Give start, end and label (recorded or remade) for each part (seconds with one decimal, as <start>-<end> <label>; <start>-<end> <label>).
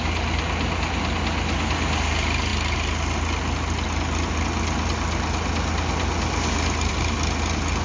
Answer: 0.0-7.8 recorded